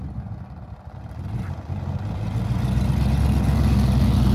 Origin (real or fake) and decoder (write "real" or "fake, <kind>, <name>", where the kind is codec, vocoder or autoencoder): real